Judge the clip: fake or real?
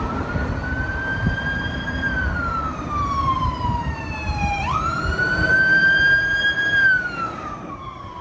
fake